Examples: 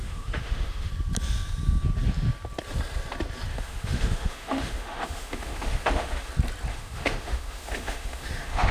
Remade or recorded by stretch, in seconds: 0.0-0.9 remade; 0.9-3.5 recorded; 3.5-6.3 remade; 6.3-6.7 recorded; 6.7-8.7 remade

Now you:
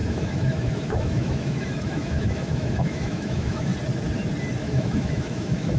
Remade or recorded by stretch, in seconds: 0.0-3.7 remade; 3.7-4.6 recorded; 4.6-5.8 remade

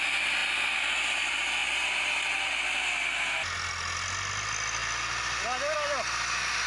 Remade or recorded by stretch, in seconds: 0.0-6.7 recorded